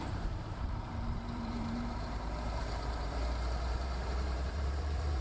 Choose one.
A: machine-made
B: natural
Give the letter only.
A